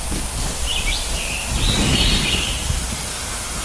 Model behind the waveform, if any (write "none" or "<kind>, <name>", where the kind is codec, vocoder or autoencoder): none